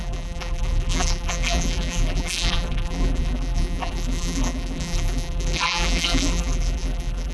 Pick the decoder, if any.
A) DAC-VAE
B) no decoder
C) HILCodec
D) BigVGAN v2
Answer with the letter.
D